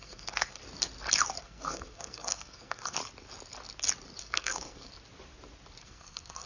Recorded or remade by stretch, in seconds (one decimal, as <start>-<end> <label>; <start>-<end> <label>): 0.0-0.6 remade; 0.6-1.4 recorded; 1.4-3.0 remade; 3.0-4.2 recorded; 4.2-4.9 remade; 4.9-5.8 recorded; 5.8-6.5 remade